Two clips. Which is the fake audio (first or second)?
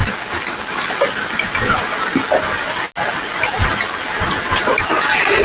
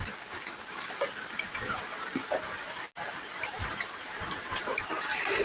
second